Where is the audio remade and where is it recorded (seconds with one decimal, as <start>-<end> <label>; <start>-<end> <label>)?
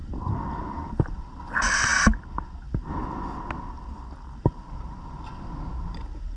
0.0-6.4 recorded